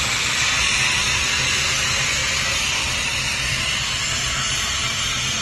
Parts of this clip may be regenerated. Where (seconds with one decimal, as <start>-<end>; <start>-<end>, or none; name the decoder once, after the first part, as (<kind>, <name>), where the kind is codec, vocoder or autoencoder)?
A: none